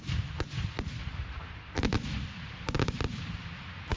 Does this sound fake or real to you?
real